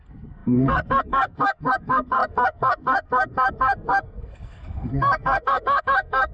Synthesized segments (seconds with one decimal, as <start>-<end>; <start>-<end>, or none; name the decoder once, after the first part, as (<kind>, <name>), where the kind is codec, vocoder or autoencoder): 0.0-6.3 (codec, SNAC)